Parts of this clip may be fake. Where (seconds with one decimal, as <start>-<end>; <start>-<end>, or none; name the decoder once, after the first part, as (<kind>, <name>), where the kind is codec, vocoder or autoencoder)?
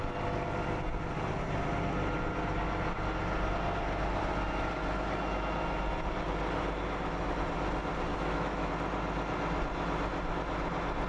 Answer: 8.1-8.7 (autoencoder, DAC-VAE)